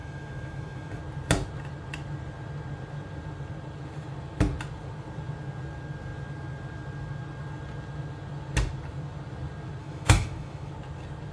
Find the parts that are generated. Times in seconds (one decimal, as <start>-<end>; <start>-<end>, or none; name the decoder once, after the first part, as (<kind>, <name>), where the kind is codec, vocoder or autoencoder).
0.0-1.0 (autoencoder, DAC-VAE); 9.8-10.7